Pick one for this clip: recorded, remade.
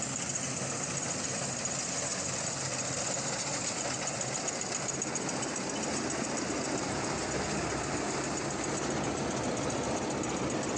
recorded